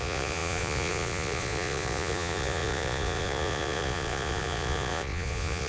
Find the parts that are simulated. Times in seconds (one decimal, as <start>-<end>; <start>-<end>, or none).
0.0-5.7